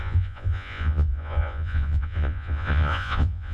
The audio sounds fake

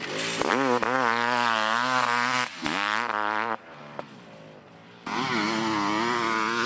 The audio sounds real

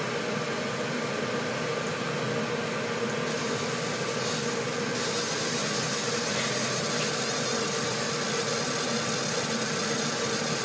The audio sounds real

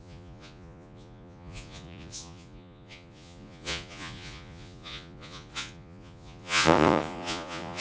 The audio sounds fake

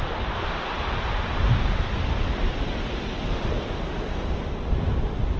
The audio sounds real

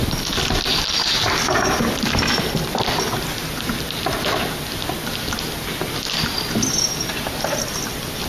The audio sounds real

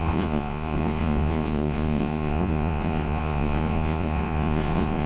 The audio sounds fake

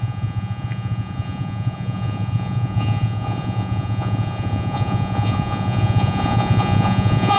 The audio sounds fake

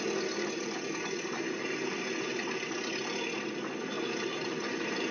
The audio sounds real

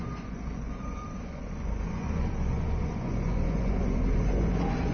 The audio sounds fake